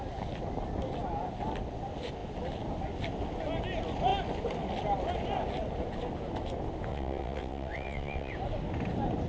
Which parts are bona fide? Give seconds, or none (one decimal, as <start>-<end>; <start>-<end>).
0.0-6.9; 8.3-9.3